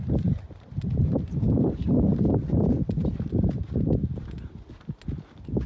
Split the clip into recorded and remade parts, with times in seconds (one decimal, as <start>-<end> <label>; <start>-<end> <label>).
0.0-5.7 recorded